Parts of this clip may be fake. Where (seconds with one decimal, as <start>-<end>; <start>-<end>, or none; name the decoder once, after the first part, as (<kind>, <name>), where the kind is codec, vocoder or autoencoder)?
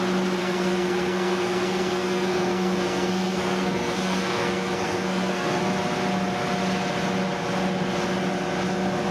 0.4-5.6 (codec, SNAC)